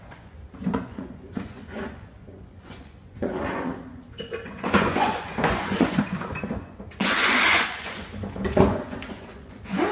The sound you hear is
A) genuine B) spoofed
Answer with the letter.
B